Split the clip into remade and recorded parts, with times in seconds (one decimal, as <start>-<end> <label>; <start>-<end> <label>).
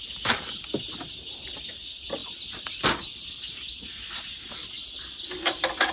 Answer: 0.0-5.9 recorded